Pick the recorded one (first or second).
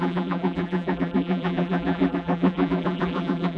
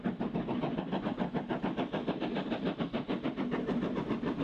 second